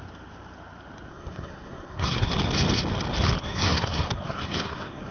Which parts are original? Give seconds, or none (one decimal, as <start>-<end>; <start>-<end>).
0.0-1.1; 2.3-3.4